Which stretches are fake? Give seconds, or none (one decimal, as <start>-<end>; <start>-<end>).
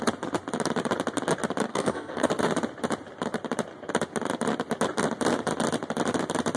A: 1.7-2.3